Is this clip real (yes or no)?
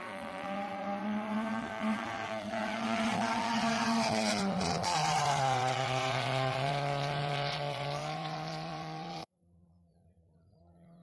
no